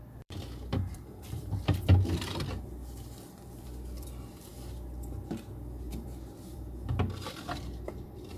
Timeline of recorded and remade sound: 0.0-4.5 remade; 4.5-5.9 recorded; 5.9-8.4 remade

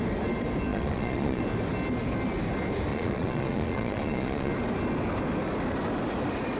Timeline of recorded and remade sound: 0.0-0.7 recorded; 0.7-1.4 remade; 1.4-2.9 recorded; 2.9-4.5 remade; 4.5-6.6 recorded

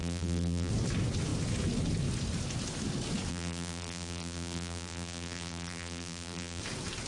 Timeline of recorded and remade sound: 0.0-0.7 remade; 0.7-3.3 recorded; 3.3-6.6 remade; 6.6-7.1 recorded

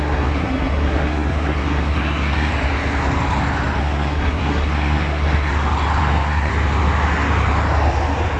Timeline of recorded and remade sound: 0.0-2.5 remade; 2.5-3.8 recorded; 3.8-5.5 remade; 5.5-6.0 recorded; 6.0-6.5 remade; 6.5-8.4 recorded

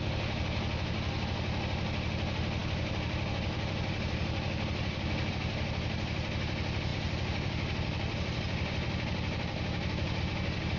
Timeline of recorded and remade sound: 0.0-2.6 recorded; 2.6-5.3 remade; 5.3-6.9 recorded; 6.9-10.2 remade; 10.2-10.8 recorded

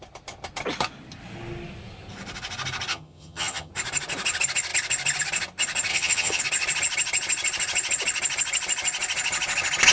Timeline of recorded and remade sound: 0.0-2.9 recorded; 2.9-3.7 remade; 3.7-5.9 recorded; 5.9-6.4 remade; 6.4-9.9 recorded

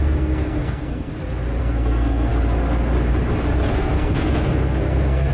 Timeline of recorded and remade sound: 0.0-1.1 remade; 1.1-1.6 recorded; 1.6-2.3 remade; 2.3-3.7 recorded; 3.7-5.3 remade

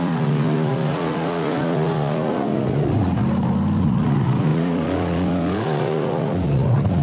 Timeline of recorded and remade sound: 0.0-3.2 remade; 3.2-3.8 recorded; 3.8-7.0 remade